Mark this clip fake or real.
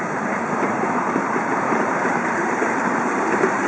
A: fake